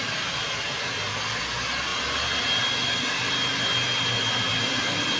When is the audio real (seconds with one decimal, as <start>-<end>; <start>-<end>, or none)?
0.0-5.2